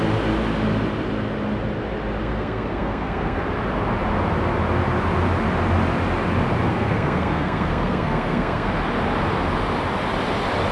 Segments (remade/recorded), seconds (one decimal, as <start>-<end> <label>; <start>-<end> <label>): 0.0-2.2 recorded; 2.2-3.4 remade; 3.4-6.7 recorded; 6.7-8.7 remade; 8.7-10.7 recorded